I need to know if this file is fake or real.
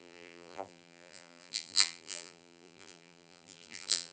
fake